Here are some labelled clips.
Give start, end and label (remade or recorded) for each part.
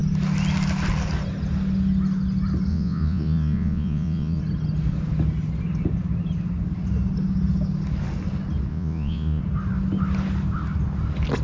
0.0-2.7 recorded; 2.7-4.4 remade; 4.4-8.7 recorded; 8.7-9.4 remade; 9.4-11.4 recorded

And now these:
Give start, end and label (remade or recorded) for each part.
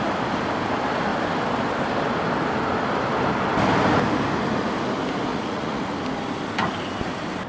0.0-5.3 recorded; 5.3-5.8 remade; 5.8-7.5 recorded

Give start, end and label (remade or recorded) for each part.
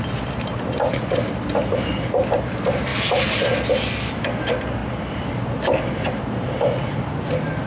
0.0-7.7 recorded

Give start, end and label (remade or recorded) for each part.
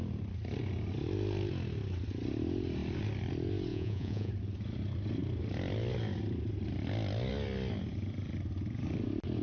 0.0-3.7 recorded; 3.7-4.3 remade; 4.3-9.4 recorded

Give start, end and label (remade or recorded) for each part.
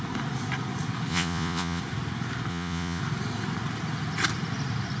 0.0-1.1 recorded; 1.1-1.8 remade; 1.8-2.5 recorded; 2.5-3.0 remade; 3.0-5.0 recorded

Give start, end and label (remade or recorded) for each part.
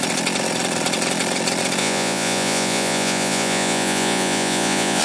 0.0-1.8 recorded; 1.8-5.0 remade